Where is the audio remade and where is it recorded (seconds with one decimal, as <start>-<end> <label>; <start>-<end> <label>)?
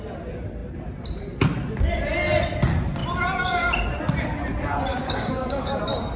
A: 0.0-4.9 recorded; 4.9-5.7 remade; 5.7-6.2 recorded